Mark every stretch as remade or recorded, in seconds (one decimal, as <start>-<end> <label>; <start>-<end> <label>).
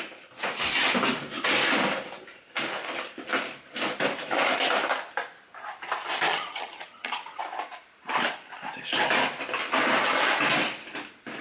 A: 0.0-6.3 recorded; 6.3-7.4 remade; 7.4-11.4 recorded